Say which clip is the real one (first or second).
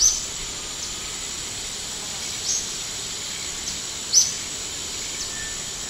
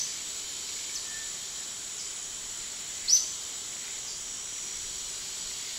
first